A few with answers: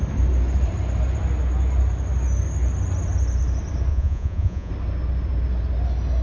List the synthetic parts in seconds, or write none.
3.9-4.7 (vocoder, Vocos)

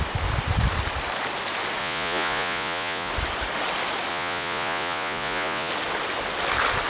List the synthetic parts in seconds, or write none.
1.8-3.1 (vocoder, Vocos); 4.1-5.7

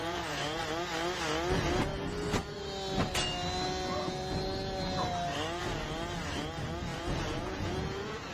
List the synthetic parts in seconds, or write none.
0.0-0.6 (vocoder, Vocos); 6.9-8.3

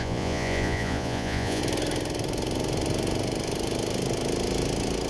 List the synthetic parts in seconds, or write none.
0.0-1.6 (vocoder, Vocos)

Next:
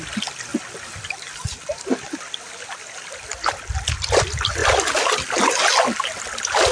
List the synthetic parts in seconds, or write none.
none

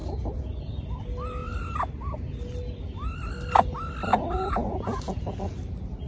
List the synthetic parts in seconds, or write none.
4.1-5.2 (vocoder, Vocos)

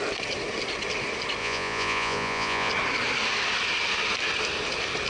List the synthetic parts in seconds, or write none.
1.4-2.7 (vocoder, Vocos)